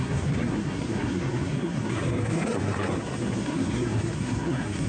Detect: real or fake fake